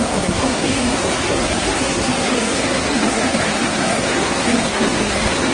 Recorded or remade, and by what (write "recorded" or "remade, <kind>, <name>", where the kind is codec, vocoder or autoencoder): remade, codec, SNAC